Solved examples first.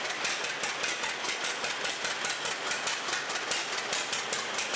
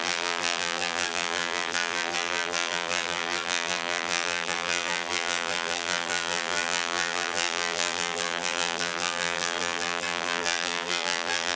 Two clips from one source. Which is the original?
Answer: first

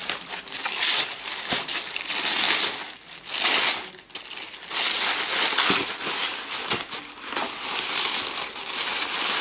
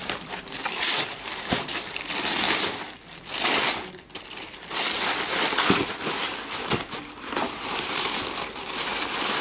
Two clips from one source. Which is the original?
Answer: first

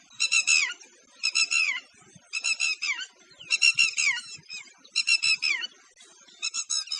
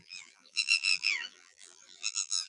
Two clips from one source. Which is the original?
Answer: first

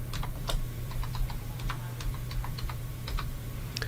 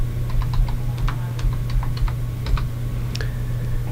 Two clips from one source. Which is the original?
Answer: second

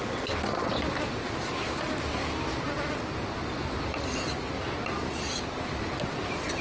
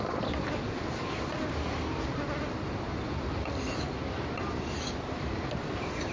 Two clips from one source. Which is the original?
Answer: first